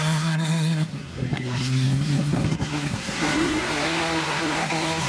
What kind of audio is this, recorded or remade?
remade